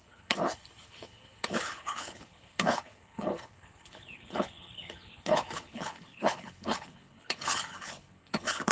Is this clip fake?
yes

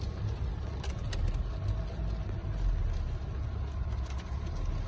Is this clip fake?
no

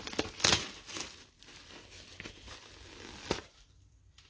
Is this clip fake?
no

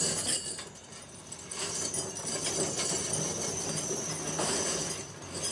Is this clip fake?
no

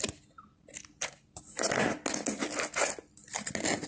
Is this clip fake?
no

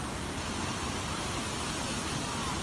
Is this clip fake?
no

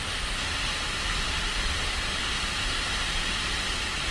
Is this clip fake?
no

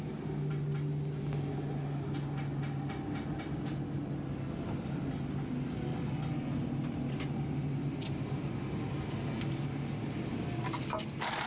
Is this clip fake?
no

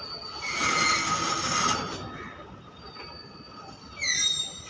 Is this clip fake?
no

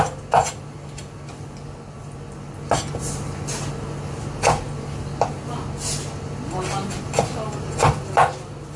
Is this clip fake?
no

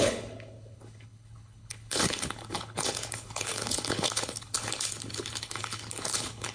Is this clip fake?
yes